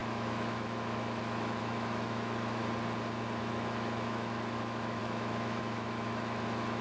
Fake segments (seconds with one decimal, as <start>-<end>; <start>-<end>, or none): 0.0-2.6; 3.5-6.8